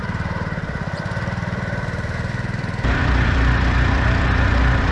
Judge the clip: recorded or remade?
remade